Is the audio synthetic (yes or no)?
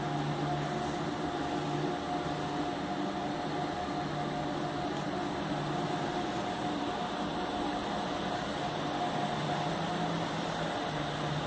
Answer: no